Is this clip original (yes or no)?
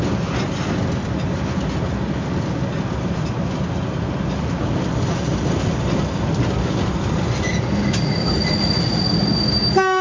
yes